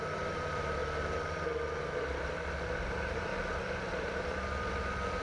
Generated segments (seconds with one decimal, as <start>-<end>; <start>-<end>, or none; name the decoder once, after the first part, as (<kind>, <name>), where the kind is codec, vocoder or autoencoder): 0.0-0.8 (vocoder, BigVGAN v2); 1.8-3.3; 3.9-5.2